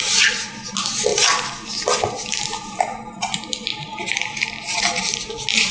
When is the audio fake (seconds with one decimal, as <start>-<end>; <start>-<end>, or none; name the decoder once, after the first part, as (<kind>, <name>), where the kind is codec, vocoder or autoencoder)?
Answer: 3.7-4.8 (vocoder, BigVGAN v2)